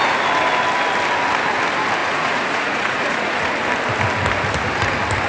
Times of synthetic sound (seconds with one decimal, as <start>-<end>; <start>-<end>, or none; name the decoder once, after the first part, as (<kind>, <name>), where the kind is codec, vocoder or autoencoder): 2.0-3.5 (vocoder, Vocos)